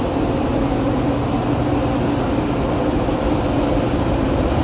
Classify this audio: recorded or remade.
recorded